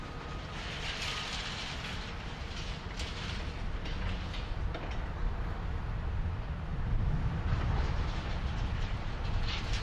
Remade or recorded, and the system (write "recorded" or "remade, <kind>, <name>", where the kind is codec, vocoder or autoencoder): recorded